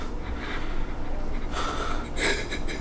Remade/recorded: recorded